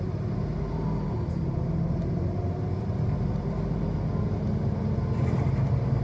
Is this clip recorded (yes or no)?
yes